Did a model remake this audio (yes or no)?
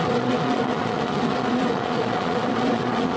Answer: yes